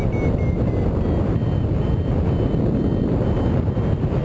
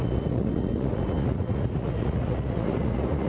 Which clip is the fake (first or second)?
second